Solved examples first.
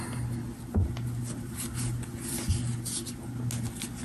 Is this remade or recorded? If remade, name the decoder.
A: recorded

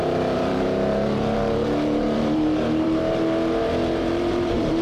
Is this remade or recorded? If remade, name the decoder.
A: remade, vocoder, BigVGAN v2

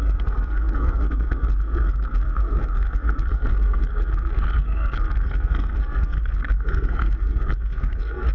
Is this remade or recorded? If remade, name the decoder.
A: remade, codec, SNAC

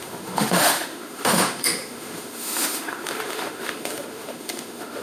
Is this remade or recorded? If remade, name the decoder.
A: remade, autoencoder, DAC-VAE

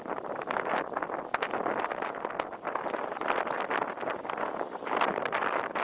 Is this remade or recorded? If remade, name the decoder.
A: recorded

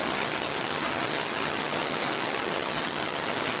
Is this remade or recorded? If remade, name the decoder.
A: remade, vocoder, HiFi-GAN